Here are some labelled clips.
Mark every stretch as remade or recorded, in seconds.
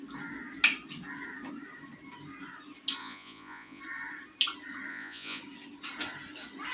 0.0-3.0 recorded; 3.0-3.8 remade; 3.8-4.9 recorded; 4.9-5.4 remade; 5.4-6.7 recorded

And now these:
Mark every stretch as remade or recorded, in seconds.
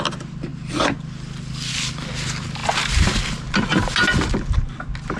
0.0-5.2 recorded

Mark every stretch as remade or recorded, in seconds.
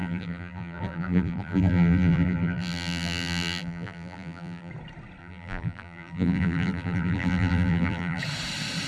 0.0-4.7 remade; 4.7-5.2 recorded; 5.2-8.2 remade; 8.2-8.9 recorded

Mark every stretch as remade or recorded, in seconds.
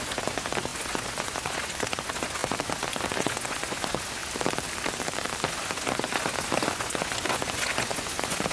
0.0-4.2 remade; 4.2-5.5 recorded; 5.5-8.5 remade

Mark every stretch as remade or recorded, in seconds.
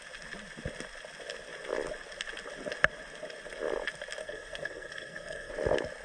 0.0-4.2 recorded; 4.2-5.5 remade; 5.5-6.0 recorded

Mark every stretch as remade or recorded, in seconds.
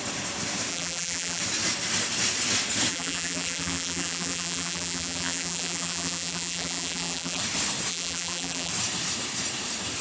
0.0-0.7 recorded; 0.7-1.4 remade; 1.4-2.9 recorded; 2.9-7.4 remade; 7.4-7.9 recorded; 7.9-8.7 remade; 8.7-10.0 recorded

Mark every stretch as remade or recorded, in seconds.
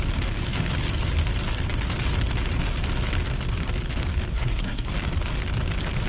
0.0-4.3 recorded; 4.3-4.9 remade; 4.9-6.1 recorded